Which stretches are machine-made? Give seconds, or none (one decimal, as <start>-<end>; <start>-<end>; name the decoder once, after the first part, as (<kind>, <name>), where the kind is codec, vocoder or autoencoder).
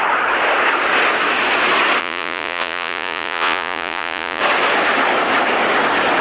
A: 2.0-4.4 (vocoder, Vocos)